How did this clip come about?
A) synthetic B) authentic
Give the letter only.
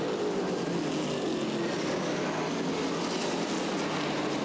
B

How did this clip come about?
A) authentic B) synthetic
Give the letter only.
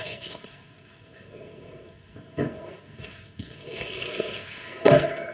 B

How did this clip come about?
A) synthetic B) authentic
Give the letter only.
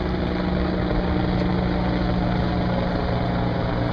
B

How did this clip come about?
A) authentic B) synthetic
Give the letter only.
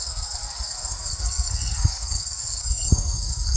B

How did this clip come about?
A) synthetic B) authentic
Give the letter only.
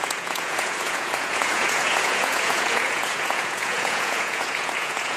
A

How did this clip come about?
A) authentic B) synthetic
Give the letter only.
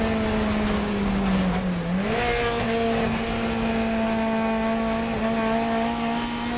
A